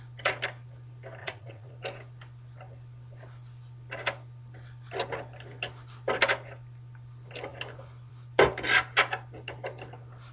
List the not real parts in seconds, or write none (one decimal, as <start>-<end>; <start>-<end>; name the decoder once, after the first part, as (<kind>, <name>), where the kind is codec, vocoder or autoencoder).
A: 1.2-1.7 (vocoder, Vocos)